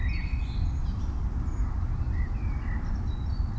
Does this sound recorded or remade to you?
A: recorded